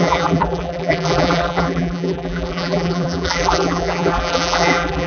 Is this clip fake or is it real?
fake